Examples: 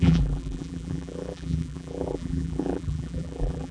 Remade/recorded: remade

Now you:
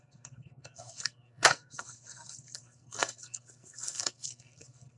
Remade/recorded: remade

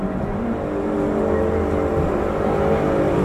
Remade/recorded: recorded